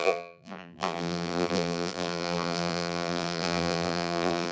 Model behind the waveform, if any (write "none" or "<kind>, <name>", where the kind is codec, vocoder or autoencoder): vocoder, BigVGAN v2